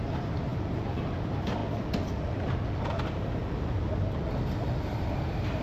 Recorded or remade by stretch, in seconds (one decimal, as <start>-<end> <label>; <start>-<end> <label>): 0.0-0.5 remade; 0.5-1.2 recorded; 1.2-1.6 remade; 1.6-3.0 recorded; 3.0-3.4 remade; 3.4-4.9 recorded; 4.9-5.6 remade